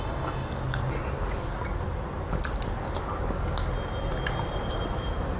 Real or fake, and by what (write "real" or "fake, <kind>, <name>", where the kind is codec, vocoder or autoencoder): real